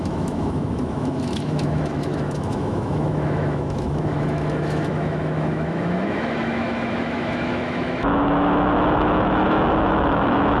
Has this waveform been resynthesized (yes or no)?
yes